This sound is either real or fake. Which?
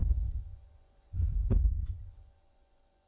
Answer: fake